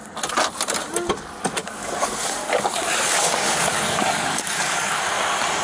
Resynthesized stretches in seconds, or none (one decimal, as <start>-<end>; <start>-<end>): 1.6-5.0